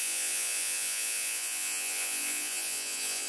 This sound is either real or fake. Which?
fake